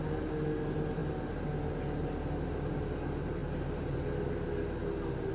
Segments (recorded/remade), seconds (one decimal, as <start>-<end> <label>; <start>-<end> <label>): 0.0-5.3 recorded